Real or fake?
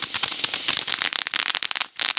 real